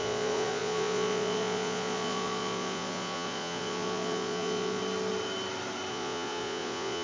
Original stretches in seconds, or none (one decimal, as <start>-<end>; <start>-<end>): 4.8-5.9